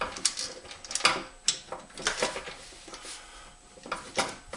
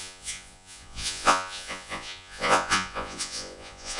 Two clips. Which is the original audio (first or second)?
first